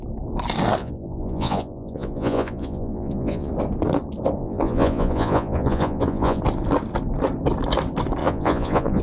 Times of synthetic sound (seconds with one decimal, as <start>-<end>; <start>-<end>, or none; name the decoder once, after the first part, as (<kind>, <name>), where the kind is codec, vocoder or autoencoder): 0.8-3.5 (vocoder, Vocos); 4.4-6.4; 8.2-9.0